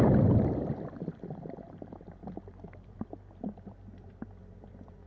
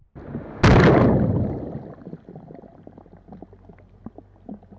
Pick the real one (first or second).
second